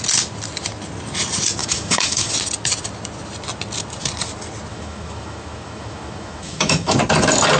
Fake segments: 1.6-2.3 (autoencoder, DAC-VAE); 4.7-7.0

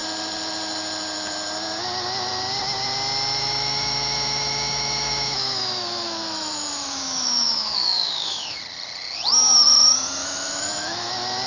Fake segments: 3.4-8.6 (autoencoder, DAC-VAE); 10.2-11.1

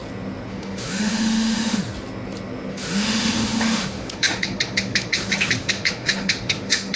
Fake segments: 0.5-1.8 (autoencoder, DAC-VAE); 2.7-7.0

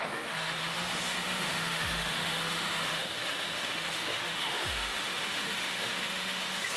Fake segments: 0.0-6.8 (autoencoder, DAC-VAE)

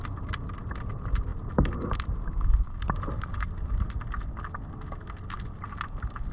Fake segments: none

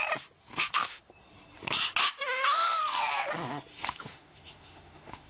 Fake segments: 0.5-1.0 (autoencoder, DAC-VAE); 2.0-2.8; 3.7-5.3

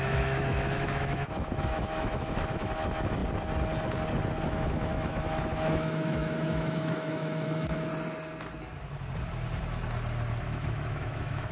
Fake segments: 0.0-3.2 (autoencoder, DAC-VAE); 4.4-7.9; 10.4-11.5